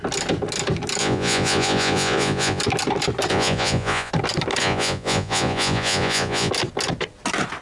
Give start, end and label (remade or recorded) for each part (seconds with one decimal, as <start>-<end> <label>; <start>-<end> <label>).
0.0-1.0 recorded; 1.0-2.6 remade; 2.6-3.3 recorded; 3.3-4.1 remade; 4.1-4.6 recorded; 4.6-6.5 remade; 6.5-7.6 recorded